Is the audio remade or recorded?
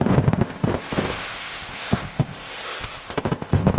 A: remade